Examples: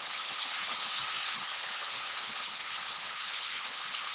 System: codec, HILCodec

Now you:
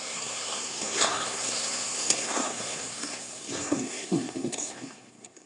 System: codec, SNAC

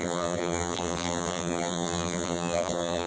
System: vocoder, BigVGAN v2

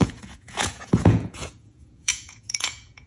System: vocoder, Vocos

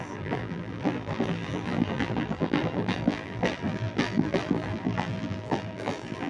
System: vocoder, BigVGAN v2